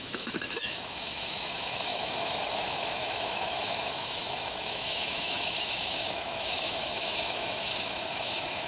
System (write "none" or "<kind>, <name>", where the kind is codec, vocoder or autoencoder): autoencoder, DAC-VAE